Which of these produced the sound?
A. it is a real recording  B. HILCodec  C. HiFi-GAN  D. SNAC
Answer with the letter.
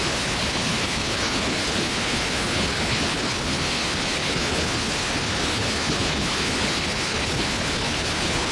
B